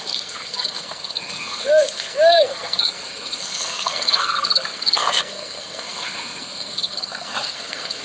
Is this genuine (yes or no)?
no